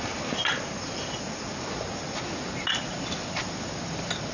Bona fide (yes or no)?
yes